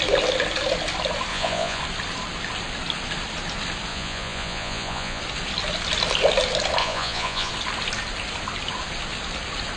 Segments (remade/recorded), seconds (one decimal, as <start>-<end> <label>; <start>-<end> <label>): 0.0-1.3 recorded; 1.3-1.8 remade; 1.8-3.9 recorded; 3.9-5.2 remade; 5.2-6.8 recorded; 6.8-7.5 remade; 7.5-9.8 recorded